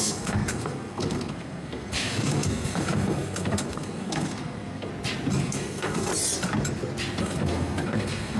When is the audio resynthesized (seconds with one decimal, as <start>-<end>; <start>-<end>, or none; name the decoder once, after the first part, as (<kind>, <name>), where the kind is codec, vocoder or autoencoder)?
0.0-4.9 (codec, SNAC); 5.4-6.1; 7.2-8.4